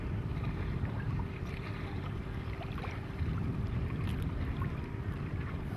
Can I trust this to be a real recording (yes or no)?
no